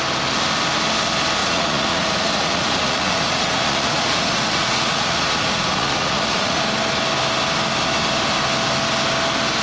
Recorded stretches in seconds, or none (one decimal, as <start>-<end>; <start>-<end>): 0.0-1.4; 6.6-9.6